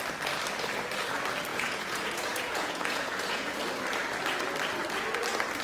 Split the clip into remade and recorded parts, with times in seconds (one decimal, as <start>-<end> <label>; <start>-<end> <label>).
0.0-1.5 recorded; 1.5-3.6 remade; 3.6-5.6 recorded